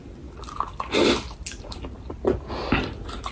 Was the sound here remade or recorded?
recorded